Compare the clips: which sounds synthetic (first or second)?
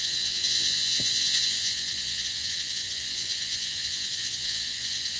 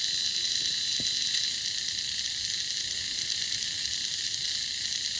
first